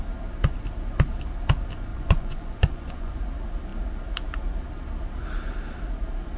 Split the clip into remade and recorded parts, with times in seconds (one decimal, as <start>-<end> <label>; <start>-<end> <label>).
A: 0.0-1.9 recorded; 1.9-3.2 remade; 3.2-6.4 recorded